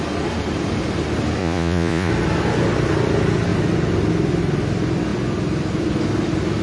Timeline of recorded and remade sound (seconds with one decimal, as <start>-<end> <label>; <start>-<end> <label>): 0.0-1.4 recorded; 1.4-2.1 remade; 2.1-6.6 recorded